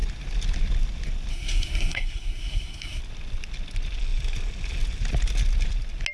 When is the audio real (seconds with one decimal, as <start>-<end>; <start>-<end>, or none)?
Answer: 0.0-1.3; 3.0-6.1